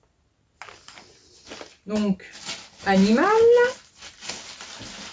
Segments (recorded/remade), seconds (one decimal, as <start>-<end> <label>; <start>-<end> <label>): 0.0-5.1 recorded